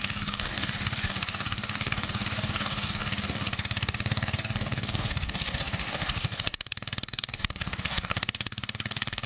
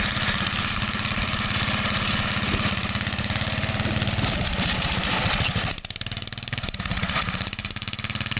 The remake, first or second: first